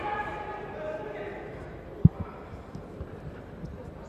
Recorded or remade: remade